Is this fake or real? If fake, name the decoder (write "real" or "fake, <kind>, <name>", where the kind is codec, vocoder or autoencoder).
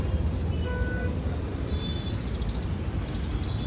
real